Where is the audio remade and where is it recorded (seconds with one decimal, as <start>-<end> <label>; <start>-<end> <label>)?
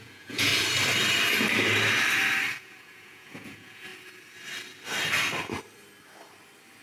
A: 0.0-0.5 remade; 0.5-2.6 recorded; 2.6-3.9 remade; 3.9-6.8 recorded